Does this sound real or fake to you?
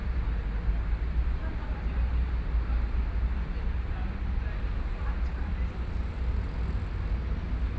real